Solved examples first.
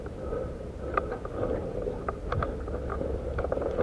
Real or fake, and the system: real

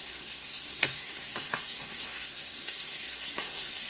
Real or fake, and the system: fake, codec, SNAC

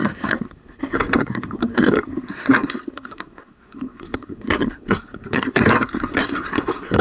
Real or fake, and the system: fake, codec, SNAC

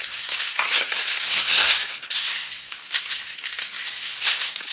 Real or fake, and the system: fake, codec, SNAC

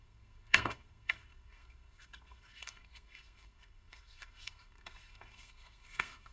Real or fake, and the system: fake, codec, SNAC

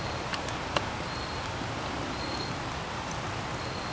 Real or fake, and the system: real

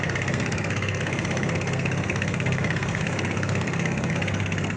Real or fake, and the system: fake, codec, SNAC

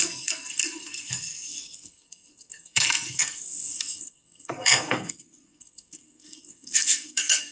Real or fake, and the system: fake, codec, SNAC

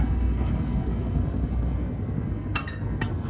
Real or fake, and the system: fake, codec, SNAC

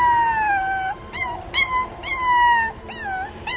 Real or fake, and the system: real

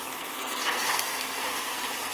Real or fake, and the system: fake, codec, SNAC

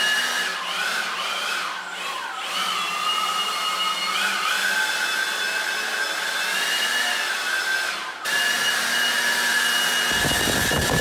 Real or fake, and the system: real